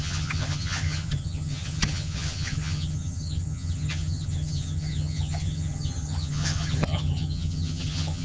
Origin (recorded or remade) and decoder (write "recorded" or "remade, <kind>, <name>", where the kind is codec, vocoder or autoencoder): remade, vocoder, HiFi-GAN